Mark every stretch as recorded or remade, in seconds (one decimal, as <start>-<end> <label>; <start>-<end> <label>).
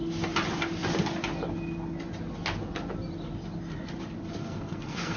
0.0-4.4 recorded; 4.4-5.2 remade